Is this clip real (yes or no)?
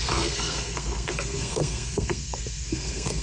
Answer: no